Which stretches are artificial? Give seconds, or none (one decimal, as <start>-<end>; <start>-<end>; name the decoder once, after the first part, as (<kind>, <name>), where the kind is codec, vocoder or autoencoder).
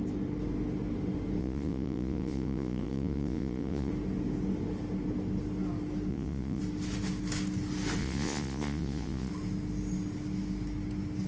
1.4-3.9 (vocoder, Vocos); 6.1-6.6; 8.0-9.3